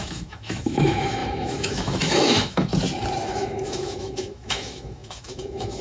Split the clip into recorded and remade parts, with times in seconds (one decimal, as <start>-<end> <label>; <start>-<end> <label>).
0.0-2.7 remade; 2.7-3.3 recorded; 3.3-5.8 remade

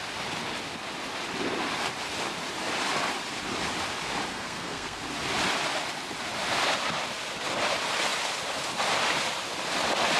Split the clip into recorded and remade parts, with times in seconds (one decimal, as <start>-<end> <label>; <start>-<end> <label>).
0.0-4.3 recorded; 4.3-5.0 remade; 5.0-10.2 recorded